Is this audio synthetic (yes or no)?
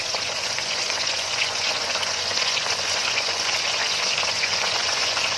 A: yes